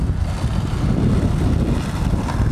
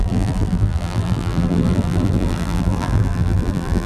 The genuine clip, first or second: first